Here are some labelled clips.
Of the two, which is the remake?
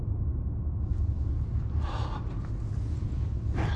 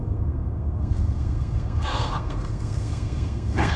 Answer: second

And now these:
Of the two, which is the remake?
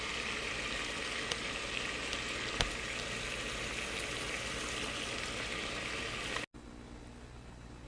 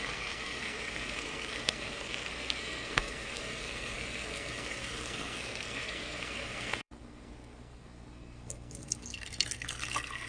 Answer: second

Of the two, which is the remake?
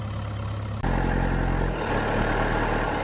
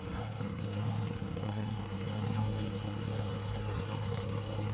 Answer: second